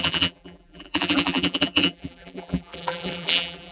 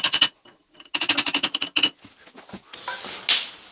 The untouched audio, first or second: second